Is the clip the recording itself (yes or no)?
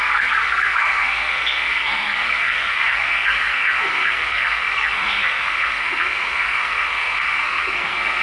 no